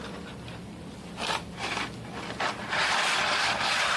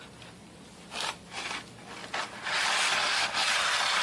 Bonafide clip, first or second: second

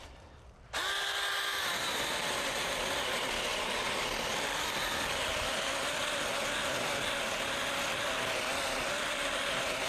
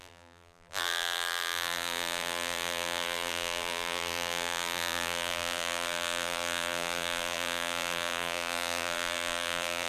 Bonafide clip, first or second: first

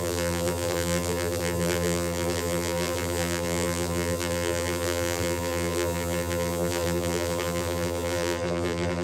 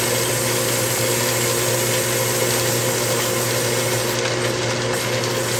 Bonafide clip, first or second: second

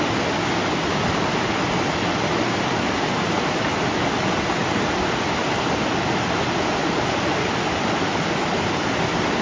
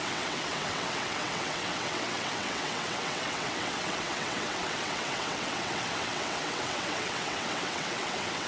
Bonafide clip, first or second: first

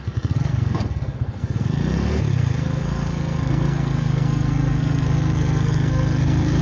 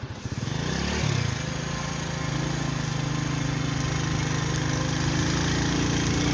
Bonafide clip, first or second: second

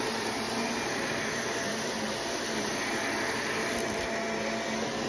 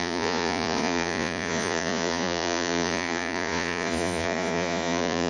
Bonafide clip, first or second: first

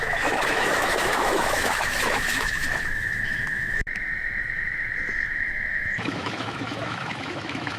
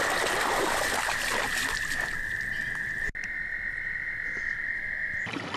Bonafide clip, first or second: second